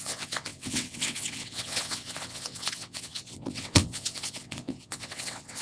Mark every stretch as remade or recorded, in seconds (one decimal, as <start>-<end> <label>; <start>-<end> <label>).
0.0-5.6 remade